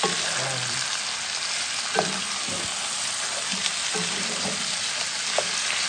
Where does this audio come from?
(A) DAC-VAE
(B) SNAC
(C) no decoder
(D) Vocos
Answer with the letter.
C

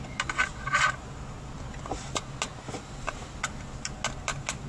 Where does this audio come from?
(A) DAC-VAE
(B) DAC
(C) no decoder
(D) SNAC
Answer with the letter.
C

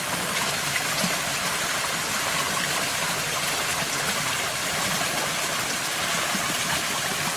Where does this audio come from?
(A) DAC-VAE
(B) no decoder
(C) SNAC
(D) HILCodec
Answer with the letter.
B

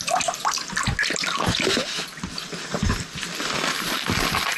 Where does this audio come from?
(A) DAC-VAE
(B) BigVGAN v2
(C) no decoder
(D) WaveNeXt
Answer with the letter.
C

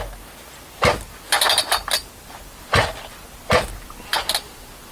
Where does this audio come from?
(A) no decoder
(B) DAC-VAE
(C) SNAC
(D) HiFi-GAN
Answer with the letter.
A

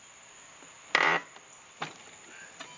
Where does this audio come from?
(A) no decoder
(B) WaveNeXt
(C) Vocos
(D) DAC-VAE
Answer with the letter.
A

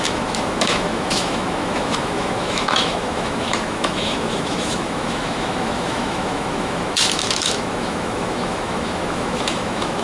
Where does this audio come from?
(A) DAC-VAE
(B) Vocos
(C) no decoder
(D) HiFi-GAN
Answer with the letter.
A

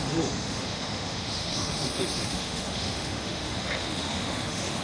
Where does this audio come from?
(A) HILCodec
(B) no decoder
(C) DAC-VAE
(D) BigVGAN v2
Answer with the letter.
C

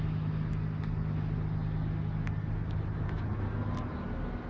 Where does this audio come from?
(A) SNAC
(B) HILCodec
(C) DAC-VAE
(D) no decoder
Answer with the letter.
D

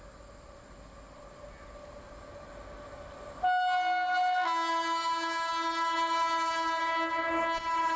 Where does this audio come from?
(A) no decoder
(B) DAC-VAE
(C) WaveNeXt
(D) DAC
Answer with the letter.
A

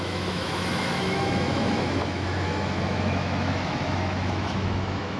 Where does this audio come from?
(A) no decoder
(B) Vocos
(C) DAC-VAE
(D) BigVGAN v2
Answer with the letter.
C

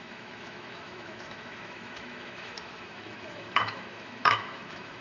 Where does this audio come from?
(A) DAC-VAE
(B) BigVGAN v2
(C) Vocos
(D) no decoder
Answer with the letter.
A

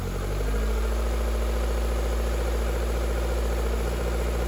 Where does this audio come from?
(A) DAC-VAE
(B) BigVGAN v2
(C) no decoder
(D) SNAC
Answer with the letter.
C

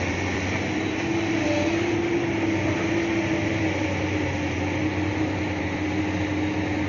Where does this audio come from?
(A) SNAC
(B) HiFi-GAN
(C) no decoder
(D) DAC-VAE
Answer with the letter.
C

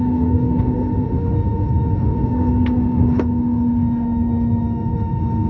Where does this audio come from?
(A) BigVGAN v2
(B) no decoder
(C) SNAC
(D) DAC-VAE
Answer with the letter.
D